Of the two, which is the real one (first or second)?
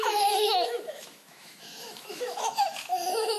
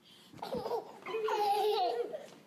second